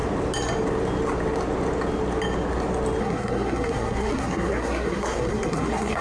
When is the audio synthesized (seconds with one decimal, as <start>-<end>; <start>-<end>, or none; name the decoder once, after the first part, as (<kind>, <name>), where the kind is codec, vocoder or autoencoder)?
3.0-6.0 (codec, SNAC)